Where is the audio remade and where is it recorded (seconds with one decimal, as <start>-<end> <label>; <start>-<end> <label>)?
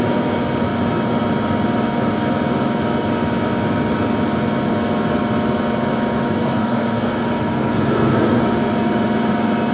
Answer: 0.0-6.4 recorded; 6.4-8.4 remade; 8.4-9.7 recorded